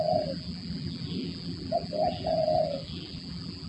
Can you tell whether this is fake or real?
fake